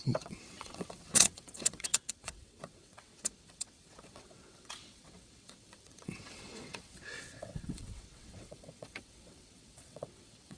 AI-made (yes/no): yes